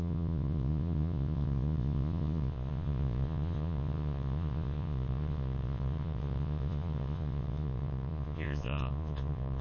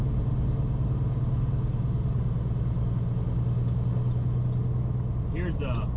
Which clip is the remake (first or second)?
first